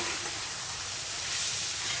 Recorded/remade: recorded